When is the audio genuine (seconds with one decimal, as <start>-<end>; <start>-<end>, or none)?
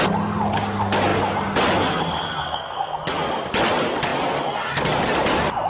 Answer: 0.0-2.4; 3.0-5.7